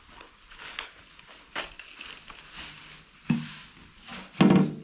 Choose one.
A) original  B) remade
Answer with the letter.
A